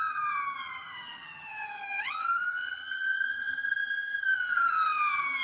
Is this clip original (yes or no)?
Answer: no